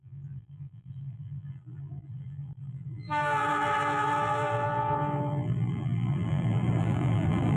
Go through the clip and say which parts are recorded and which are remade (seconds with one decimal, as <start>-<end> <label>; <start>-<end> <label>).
0.0-7.6 remade